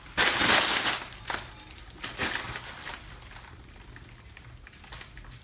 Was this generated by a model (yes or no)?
no